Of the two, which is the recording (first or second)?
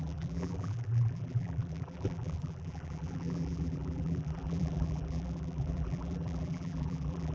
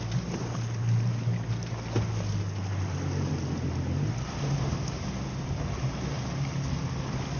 second